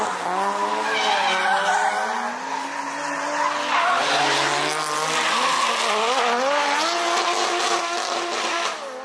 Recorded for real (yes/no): yes